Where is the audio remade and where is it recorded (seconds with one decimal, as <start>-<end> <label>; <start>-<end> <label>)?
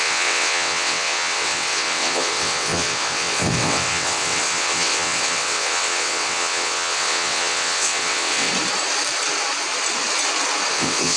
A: 0.0-8.5 remade; 8.5-10.7 recorded; 10.7-11.2 remade